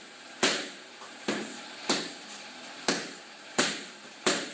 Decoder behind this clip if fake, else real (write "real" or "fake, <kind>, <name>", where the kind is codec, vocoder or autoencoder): fake, vocoder, BigVGAN v2